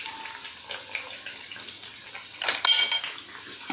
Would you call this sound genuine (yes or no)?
yes